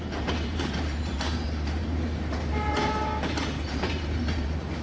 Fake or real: fake